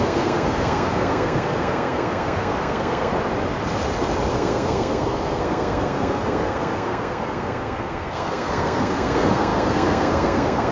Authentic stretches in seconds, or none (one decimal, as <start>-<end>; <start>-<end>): 3.1-4.3